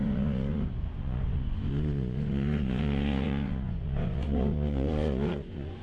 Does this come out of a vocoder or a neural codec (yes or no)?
yes